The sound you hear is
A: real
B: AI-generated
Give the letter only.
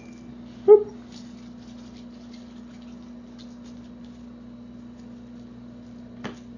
A